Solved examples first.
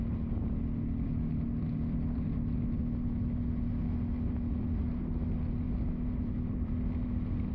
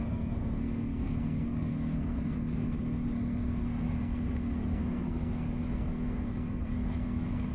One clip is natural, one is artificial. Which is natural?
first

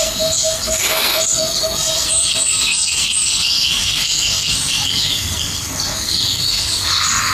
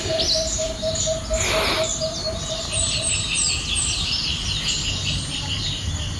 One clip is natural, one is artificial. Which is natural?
second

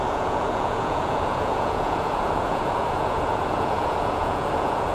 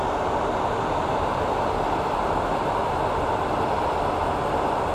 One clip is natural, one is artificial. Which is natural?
second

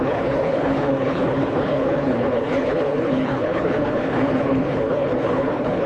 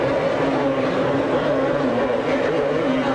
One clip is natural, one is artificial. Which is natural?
second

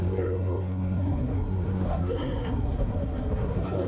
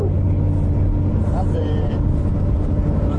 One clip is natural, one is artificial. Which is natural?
second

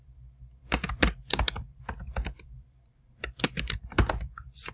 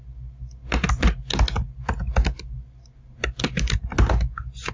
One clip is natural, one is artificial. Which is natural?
second